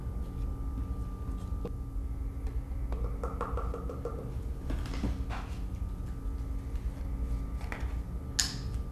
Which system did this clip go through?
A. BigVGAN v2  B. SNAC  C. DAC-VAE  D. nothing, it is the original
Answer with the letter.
D